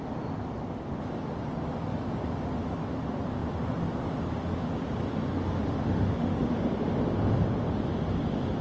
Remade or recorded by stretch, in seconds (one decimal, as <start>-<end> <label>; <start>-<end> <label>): 0.0-5.6 recorded; 5.6-6.5 remade; 6.5-8.6 recorded